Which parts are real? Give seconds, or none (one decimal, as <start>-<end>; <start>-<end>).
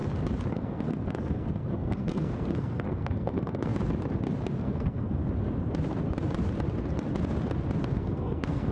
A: 0.0-0.5; 3.7-4.6; 5.2-7.8